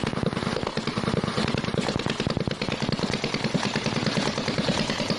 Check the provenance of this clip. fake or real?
fake